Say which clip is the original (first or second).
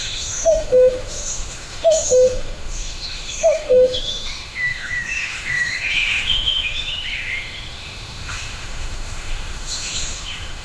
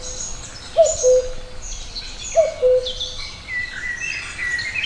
second